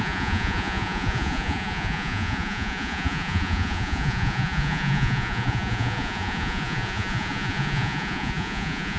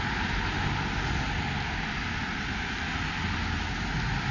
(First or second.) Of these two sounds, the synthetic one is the first